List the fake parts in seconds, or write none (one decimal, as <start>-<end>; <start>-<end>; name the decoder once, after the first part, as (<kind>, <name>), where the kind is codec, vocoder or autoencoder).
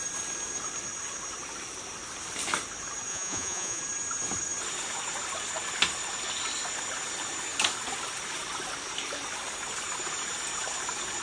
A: 3.1-3.8 (vocoder, Vocos)